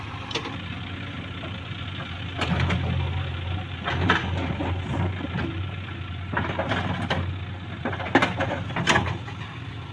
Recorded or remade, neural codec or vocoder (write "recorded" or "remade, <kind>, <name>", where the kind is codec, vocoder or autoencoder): recorded